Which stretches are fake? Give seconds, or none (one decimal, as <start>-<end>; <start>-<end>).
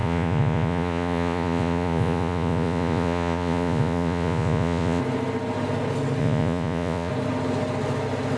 0.0-5.0; 6.2-7.1